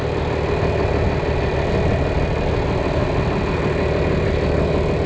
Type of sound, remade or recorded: recorded